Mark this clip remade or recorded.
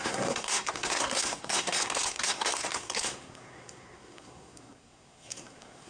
remade